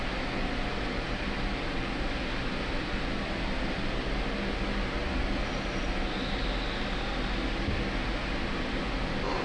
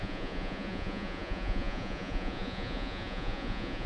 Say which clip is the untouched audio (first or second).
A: first